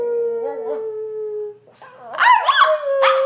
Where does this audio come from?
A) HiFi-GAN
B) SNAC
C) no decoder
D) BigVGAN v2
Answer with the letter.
C